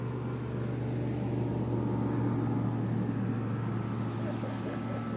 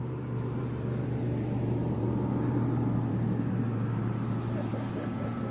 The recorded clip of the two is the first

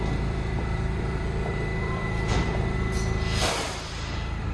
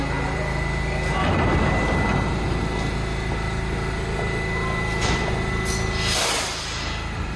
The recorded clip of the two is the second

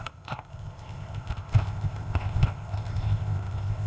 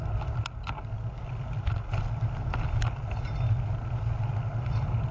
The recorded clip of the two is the second